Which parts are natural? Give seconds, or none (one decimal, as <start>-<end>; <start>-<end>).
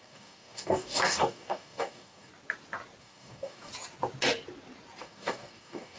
2.3-3.0; 3.7-5.0